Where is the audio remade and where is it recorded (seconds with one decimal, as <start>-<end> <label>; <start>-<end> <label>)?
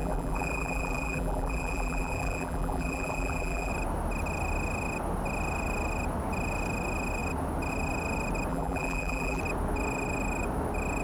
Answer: 0.0-3.7 remade; 3.7-8.5 recorded; 8.5-9.4 remade; 9.4-11.0 recorded